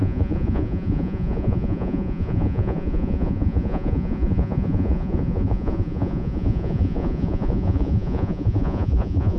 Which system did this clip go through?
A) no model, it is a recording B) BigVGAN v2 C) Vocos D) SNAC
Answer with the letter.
C